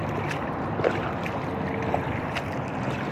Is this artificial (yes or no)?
no